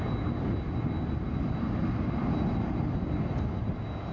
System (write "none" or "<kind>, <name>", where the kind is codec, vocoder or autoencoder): none